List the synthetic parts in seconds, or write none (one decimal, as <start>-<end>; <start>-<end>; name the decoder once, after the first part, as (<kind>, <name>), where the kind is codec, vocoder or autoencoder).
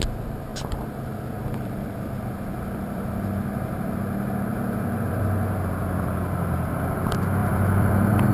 0.5-4.0 (vocoder, BigVGAN v2); 4.5-6.8; 7.4-8.3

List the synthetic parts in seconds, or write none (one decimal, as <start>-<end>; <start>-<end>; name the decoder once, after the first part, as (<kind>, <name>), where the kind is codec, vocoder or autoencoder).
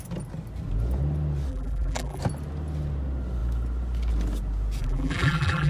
1.5-2.2 (vocoder, BigVGAN v2); 4.8-5.7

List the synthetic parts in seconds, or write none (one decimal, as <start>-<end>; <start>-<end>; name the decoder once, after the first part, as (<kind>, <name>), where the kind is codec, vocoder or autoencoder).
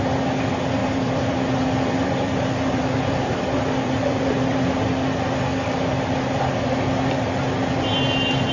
0.8-4.7 (vocoder, BigVGAN v2)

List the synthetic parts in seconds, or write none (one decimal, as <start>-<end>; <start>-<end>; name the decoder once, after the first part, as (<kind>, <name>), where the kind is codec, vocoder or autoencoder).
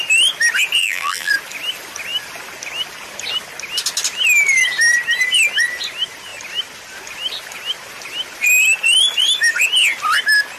0.8-1.3 (vocoder, BigVGAN v2)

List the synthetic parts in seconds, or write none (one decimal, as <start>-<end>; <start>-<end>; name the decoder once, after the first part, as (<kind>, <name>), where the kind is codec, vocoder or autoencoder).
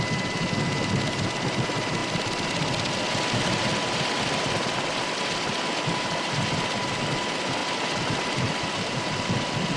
2.0-2.9 (vocoder, BigVGAN v2)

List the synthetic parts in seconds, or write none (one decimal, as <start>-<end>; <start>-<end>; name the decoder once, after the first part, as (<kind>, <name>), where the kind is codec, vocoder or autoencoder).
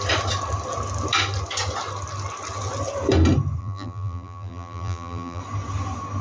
3.6-5.4 (vocoder, BigVGAN v2)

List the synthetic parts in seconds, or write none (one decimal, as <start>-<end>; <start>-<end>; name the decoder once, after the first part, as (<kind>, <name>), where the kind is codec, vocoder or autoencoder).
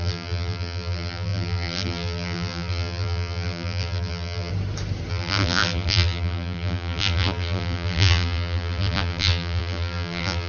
0.0-4.5 (vocoder, BigVGAN v2); 5.1-10.5